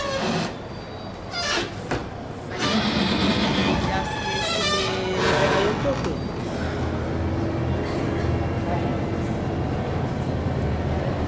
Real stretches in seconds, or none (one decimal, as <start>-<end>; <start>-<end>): 0.0-8.9

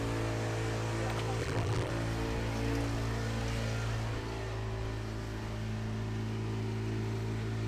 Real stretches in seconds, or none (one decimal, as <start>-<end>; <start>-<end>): 0.0-1.4; 1.9-7.7

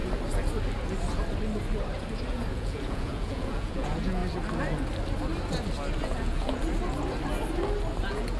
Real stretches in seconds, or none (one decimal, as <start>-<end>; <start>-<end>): 0.0-2.5; 4.2-6.0; 6.6-8.0

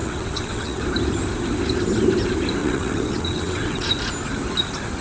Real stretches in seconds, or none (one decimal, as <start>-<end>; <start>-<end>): 0.8-2.6; 3.9-5.0

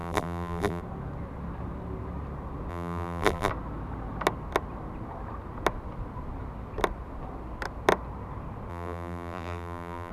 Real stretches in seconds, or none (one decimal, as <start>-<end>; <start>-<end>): 0.8-2.7; 3.5-8.7